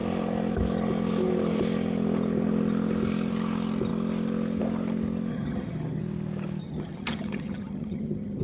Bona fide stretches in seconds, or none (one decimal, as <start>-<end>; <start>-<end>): 0.0-5.3; 6.0-6.6